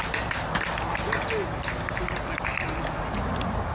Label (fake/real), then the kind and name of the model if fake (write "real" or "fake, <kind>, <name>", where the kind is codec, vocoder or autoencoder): real